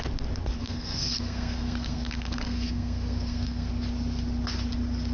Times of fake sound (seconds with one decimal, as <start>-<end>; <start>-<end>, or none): 0.6-3.7